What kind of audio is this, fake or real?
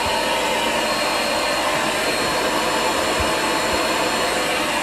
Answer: real